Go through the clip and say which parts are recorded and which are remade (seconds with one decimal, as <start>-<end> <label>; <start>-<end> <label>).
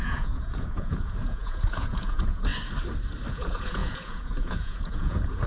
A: 0.0-2.5 remade; 2.5-3.3 recorded; 3.3-5.5 remade